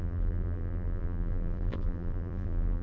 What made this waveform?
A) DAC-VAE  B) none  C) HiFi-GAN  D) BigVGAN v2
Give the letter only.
D